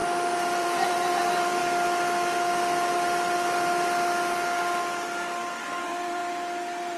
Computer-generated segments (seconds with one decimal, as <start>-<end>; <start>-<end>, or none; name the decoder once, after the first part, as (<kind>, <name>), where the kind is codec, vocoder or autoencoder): 0.6-1.6 (vocoder, BigVGAN v2); 5.8-6.2